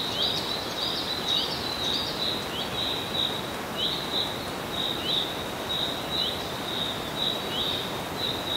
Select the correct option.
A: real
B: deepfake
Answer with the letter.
A